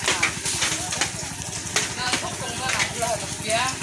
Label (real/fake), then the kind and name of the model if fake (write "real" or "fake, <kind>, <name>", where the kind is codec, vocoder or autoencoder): real